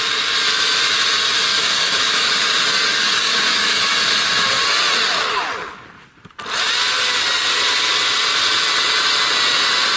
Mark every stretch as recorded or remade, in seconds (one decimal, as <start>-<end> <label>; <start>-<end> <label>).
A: 0.0-1.5 recorded; 1.5-2.5 remade; 2.5-2.9 recorded; 2.9-3.9 remade; 3.9-10.0 recorded